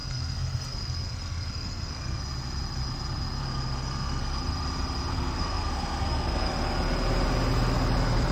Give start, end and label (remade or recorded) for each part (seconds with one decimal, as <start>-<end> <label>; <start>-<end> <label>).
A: 0.0-2.2 remade; 2.2-3.4 recorded; 3.4-4.4 remade; 4.4-5.1 recorded; 5.1-6.5 remade; 6.5-8.3 recorded